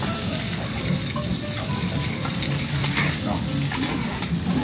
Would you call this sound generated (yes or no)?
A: no